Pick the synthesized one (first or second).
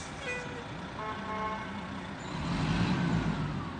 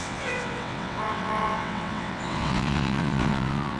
second